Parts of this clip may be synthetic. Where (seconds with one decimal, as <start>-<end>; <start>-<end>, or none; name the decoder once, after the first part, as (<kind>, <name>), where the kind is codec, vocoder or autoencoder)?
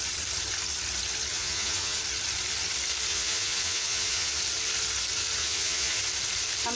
1.3-2.0 (vocoder, Vocos); 3.1-4.3; 5.4-6.0